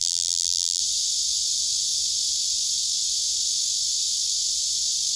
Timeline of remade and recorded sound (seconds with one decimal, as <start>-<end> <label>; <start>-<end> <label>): 0.0-0.8 remade; 0.8-5.2 recorded